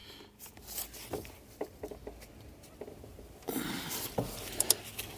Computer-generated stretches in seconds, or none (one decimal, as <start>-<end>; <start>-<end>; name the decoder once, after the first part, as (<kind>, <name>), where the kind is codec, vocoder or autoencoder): 3.1-3.8 (vocoder, BigVGAN v2)